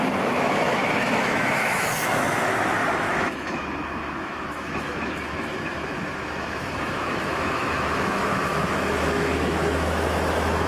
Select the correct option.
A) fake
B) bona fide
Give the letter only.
A